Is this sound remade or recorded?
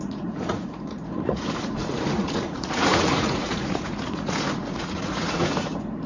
remade